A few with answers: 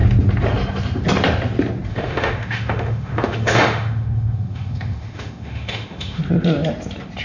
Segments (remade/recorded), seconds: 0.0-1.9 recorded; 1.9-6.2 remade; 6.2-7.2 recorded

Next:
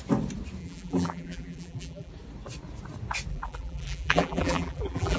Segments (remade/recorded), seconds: 0.0-0.6 recorded; 0.6-2.1 remade; 2.1-3.3 recorded; 3.3-5.2 remade

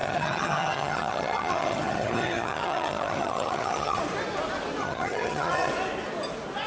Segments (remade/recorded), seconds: 0.0-4.0 remade; 4.0-4.8 recorded; 4.8-5.7 remade; 5.7-6.7 recorded

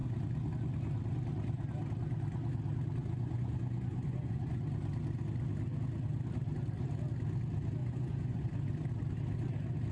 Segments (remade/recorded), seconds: 0.0-3.0 recorded; 3.0-4.6 remade; 4.6-7.8 recorded; 7.8-8.5 remade; 8.5-9.9 recorded